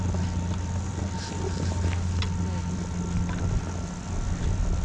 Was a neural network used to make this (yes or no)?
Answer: no